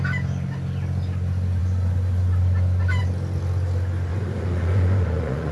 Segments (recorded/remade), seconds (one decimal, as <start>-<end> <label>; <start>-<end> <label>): 0.0-4.1 recorded; 4.1-5.5 remade